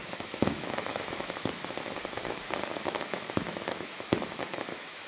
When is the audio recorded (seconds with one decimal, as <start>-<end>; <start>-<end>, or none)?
1.6-2.7